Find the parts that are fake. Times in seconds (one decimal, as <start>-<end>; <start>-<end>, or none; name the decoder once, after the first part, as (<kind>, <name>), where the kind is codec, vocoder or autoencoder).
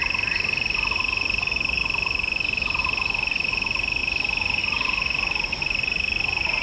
none